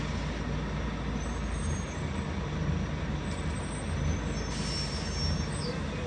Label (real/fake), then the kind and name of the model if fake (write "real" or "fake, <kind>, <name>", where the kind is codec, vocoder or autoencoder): real